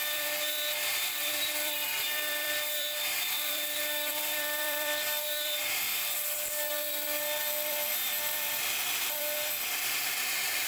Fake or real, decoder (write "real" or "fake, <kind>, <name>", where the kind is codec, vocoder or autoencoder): fake, vocoder, BigVGAN v2